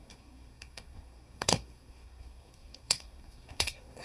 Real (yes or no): no